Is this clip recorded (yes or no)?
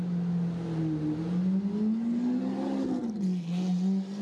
yes